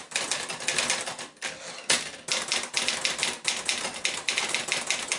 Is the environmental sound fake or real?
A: real